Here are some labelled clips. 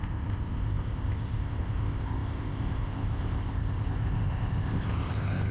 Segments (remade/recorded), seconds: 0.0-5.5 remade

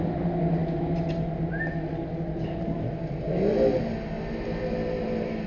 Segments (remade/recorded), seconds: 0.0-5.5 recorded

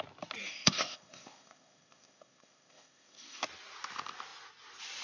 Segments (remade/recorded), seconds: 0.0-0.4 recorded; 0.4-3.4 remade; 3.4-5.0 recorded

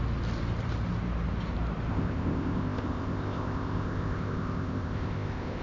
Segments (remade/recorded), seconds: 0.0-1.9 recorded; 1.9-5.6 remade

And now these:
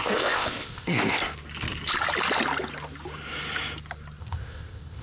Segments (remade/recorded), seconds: 0.0-1.2 remade; 1.2-4.2 recorded; 4.2-5.0 remade

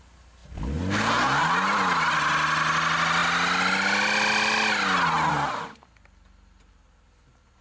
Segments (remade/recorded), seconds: 0.0-7.6 recorded

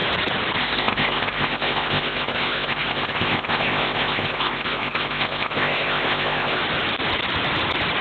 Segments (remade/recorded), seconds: 0.0-0.6 recorded; 0.6-6.6 remade; 6.6-8.0 recorded